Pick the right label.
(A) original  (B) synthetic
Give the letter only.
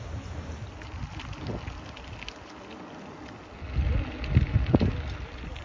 A